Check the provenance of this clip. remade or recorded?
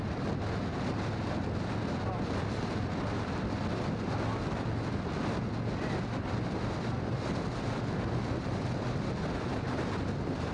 recorded